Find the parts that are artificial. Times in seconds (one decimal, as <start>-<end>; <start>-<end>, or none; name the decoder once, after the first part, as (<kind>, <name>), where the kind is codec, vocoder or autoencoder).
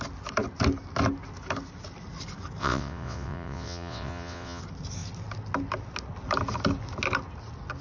2.6-4.6 (vocoder, WaveNeXt)